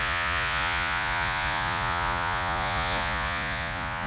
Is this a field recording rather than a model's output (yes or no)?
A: no